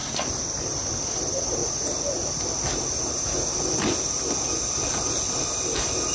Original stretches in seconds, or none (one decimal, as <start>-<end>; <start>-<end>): 0.0-1.6; 2.4-6.1